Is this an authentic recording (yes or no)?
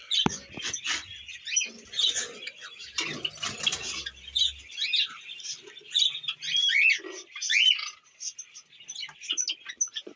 yes